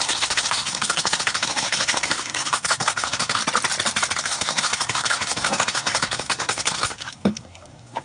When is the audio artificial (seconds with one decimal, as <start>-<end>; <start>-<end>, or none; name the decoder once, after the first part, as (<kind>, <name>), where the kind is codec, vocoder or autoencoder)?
0.0-3.4 (codec, SNAC); 4.2-8.0